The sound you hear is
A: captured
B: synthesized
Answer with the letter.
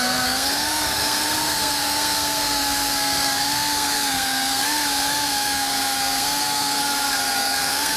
B